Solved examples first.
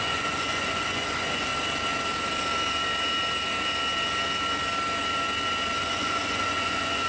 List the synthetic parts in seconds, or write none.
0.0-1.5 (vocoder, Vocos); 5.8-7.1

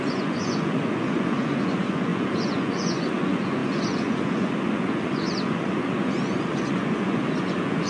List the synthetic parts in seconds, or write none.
0.0-7.9 (vocoder, Vocos)

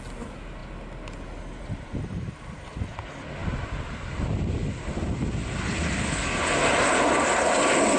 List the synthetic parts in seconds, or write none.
none

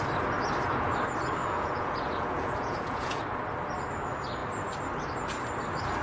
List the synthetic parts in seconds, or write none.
1.4-3.2 (vocoder, Vocos)